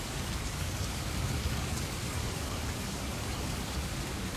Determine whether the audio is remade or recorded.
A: remade